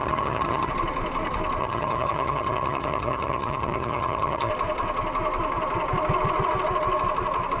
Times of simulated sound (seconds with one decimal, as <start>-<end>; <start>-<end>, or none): 0.0-0.7; 1.6-4.5